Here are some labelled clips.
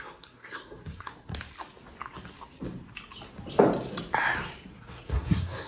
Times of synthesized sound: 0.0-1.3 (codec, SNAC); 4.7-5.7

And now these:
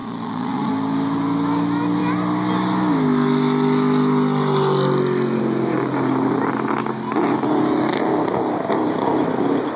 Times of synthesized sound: 0.0-0.7 (vocoder, Vocos)

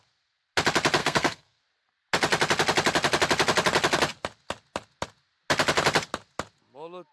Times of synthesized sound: 1.0-1.6 (codec, SNAC)

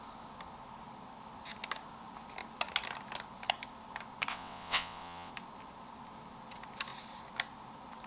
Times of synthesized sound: 4.3-5.3 (vocoder, WaveNeXt)